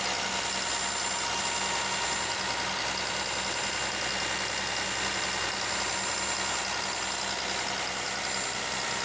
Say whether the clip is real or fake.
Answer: real